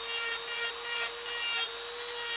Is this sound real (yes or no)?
yes